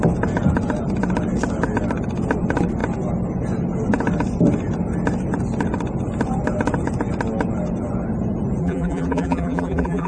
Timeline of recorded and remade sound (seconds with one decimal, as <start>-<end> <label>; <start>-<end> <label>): 0.0-8.6 recorded; 8.6-10.1 remade